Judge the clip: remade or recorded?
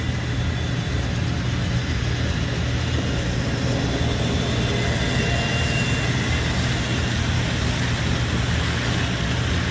recorded